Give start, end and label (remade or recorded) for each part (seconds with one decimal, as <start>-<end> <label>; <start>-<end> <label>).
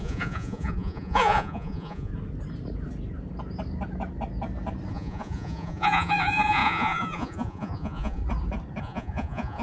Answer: 0.0-2.1 remade; 2.1-4.9 recorded; 4.9-8.2 remade; 8.2-8.8 recorded; 8.8-9.6 remade